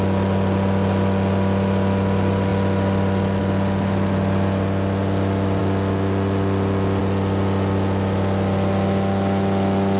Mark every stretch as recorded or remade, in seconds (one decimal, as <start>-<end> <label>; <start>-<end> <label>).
0.0-10.0 recorded